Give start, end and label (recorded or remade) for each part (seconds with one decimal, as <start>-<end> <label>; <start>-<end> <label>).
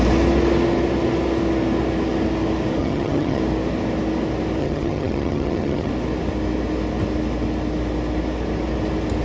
0.0-2.8 recorded; 2.8-3.4 remade; 3.4-4.6 recorded; 4.6-5.9 remade; 5.9-9.2 recorded